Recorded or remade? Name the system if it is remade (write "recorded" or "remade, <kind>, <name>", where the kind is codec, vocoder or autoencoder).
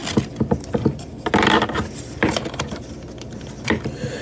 recorded